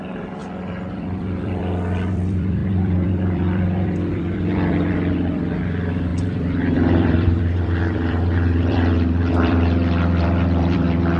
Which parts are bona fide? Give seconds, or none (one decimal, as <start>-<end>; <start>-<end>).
none

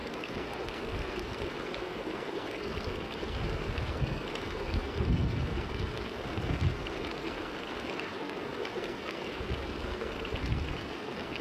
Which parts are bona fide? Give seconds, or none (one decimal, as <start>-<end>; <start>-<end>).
none

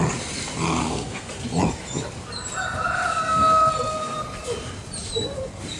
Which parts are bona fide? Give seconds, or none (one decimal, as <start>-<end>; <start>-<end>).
0.0-0.8; 1.3-3.1; 3.7-5.8

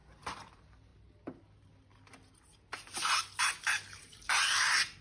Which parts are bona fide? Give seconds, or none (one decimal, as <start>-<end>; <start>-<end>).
0.0-0.5; 0.9-3.9